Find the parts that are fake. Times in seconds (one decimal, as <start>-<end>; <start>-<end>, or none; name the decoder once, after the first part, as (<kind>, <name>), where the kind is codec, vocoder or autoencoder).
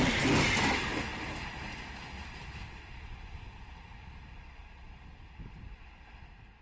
none